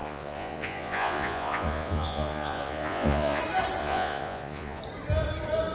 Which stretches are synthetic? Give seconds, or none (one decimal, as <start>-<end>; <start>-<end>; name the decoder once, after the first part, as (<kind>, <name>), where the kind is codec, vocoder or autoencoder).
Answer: 0.0-3.4 (vocoder, Vocos); 3.8-4.8